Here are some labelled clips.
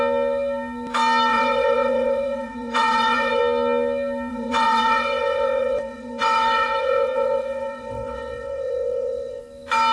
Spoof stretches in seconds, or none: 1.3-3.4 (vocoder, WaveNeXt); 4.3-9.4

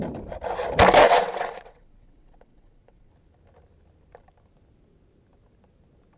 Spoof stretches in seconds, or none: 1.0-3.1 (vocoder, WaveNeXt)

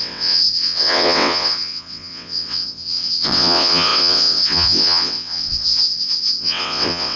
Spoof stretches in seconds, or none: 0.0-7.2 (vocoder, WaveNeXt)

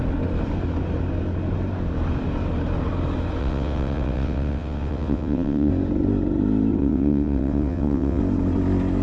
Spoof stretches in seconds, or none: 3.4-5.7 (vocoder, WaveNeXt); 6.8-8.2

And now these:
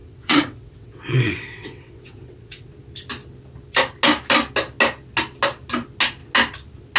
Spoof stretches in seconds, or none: 0.0-2.7 (vocoder, WaveNeXt)

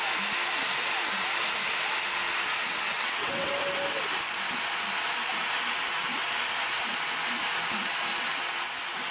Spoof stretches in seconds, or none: 2.7-3.5 (vocoder, WaveNeXt)

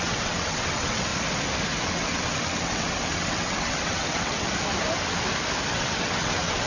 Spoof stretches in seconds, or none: 0.0-1.1 (vocoder, WaveNeXt); 1.8-4.5; 5.7-6.7